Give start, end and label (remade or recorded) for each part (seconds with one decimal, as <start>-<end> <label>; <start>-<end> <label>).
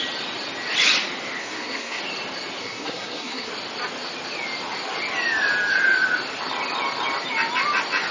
0.0-1.4 recorded; 1.4-2.0 remade; 2.0-2.6 recorded; 2.6-3.5 remade; 3.5-8.1 recorded